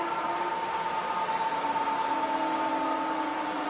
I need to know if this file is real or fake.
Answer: real